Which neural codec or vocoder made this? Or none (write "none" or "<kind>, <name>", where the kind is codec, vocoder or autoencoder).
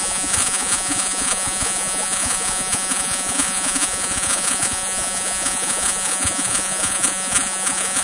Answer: vocoder, Vocos